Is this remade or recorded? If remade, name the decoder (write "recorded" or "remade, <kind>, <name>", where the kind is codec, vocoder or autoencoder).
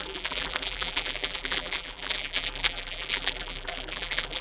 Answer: remade, vocoder, BigVGAN v2